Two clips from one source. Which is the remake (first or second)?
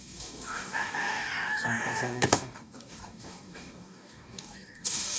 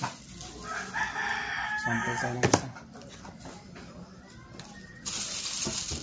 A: first